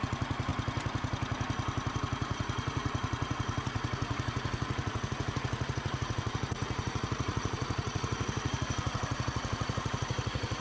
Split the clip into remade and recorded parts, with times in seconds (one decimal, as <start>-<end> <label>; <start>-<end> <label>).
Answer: 0.0-0.5 remade; 0.5-2.0 recorded; 2.0-10.6 remade